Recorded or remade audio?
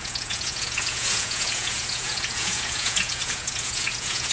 remade